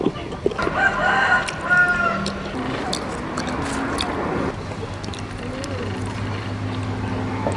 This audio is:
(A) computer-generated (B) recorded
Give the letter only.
B